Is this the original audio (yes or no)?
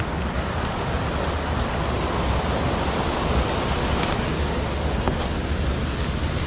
yes